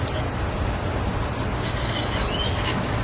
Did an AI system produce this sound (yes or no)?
no